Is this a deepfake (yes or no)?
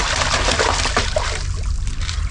no